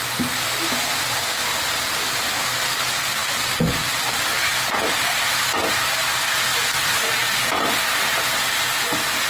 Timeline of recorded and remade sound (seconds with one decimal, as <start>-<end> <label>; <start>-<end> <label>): 0.0-9.3 recorded